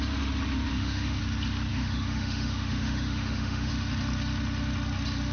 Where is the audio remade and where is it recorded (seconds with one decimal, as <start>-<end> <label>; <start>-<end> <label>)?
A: 0.0-0.7 recorded; 0.7-1.2 remade; 1.2-1.7 recorded; 1.7-3.7 remade; 3.7-5.3 recorded